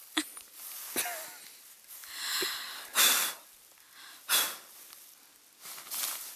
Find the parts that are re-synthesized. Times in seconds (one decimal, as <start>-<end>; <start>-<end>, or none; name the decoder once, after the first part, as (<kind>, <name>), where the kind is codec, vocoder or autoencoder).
none